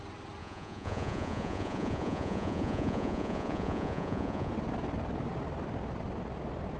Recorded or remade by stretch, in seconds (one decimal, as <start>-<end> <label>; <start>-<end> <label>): 0.0-0.4 recorded; 0.4-4.5 remade; 4.5-6.8 recorded